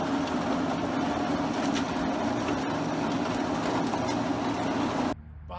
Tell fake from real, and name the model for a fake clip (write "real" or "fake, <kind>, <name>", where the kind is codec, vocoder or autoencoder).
real